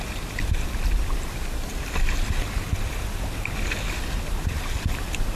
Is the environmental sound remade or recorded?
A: recorded